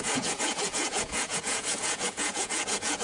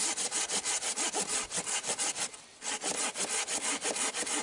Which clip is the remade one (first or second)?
first